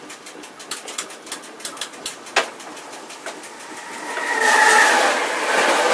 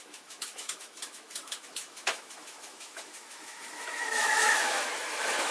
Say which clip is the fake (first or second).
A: second